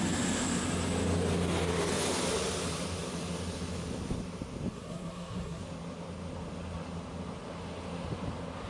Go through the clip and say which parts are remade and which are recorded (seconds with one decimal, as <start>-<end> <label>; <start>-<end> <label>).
0.0-4.7 recorded; 4.7-5.6 remade; 5.6-8.7 recorded